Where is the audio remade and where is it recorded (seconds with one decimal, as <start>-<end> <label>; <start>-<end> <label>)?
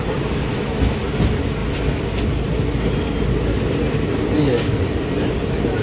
0.0-0.5 recorded; 0.5-1.0 remade; 1.0-5.8 recorded